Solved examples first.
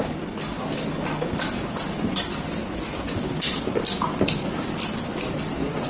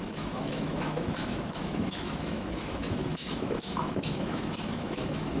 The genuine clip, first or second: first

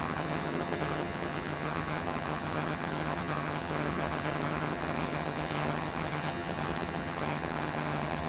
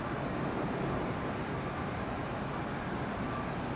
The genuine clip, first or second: second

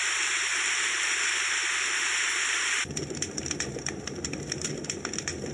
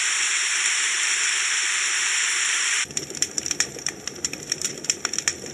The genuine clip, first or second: first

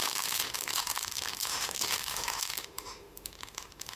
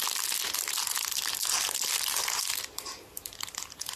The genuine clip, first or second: second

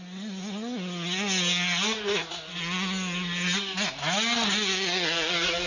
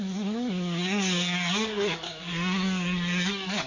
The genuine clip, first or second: first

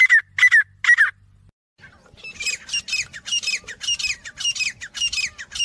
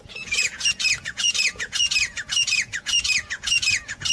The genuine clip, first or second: first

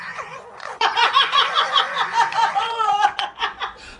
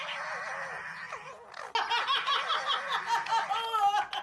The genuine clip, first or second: second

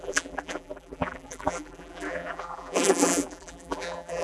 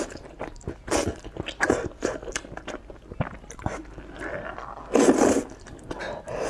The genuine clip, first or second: second